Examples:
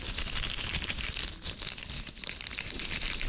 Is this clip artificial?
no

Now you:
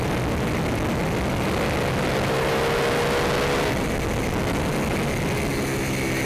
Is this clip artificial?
no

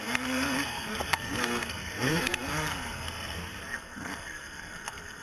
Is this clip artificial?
yes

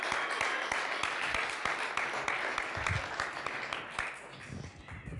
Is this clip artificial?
no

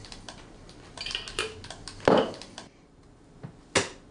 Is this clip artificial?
no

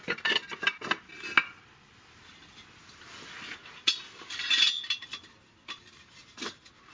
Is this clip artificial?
no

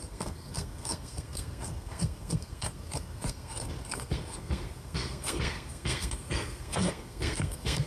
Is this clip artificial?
yes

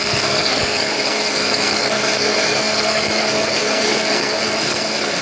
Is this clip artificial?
yes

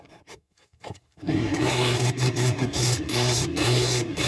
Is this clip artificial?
yes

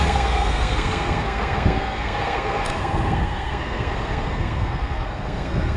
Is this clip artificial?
yes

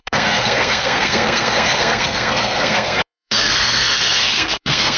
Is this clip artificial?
yes